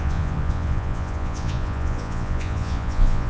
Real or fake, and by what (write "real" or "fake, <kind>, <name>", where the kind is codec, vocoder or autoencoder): fake, vocoder, Vocos